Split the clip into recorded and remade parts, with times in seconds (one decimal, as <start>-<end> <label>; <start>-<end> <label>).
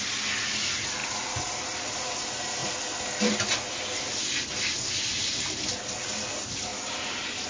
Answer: 0.0-7.5 recorded